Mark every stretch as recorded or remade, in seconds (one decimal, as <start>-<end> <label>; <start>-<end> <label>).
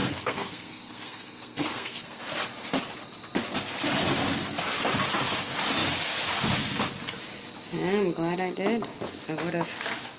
0.0-2.2 remade; 2.2-10.2 recorded